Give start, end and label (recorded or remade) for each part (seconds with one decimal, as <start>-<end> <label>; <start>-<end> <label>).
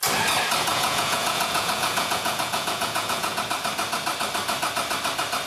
0.0-0.7 recorded; 0.7-3.4 remade; 3.4-5.5 recorded